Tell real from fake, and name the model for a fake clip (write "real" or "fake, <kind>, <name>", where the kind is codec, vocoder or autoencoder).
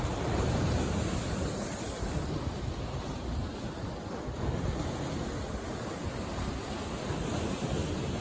real